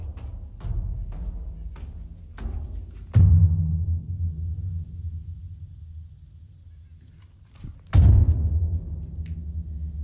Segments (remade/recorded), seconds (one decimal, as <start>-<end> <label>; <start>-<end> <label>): 0.0-10.0 recorded